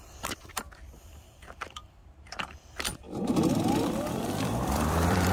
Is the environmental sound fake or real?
fake